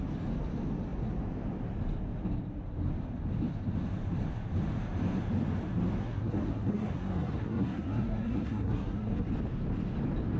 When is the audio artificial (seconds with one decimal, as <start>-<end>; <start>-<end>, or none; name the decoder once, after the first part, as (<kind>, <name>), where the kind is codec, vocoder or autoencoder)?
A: 6.0-9.3 (codec, SNAC)